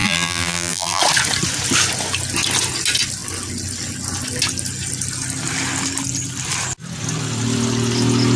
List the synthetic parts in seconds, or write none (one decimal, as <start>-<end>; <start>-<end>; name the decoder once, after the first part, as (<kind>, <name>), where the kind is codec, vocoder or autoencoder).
0.0-1.0 (vocoder, BigVGAN v2)